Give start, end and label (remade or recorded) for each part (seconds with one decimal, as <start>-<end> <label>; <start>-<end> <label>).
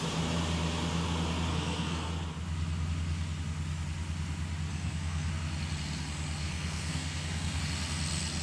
0.0-1.5 recorded; 1.5-2.1 remade; 2.1-4.7 recorded; 4.7-5.3 remade; 5.3-6.4 recorded; 6.4-7.6 remade; 7.6-8.4 recorded